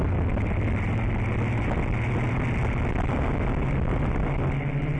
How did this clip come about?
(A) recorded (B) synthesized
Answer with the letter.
A